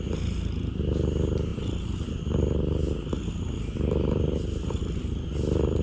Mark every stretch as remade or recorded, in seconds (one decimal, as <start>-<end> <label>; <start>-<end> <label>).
0.0-5.8 recorded